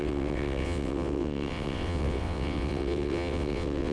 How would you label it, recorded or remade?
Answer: remade